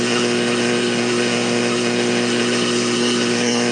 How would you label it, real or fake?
fake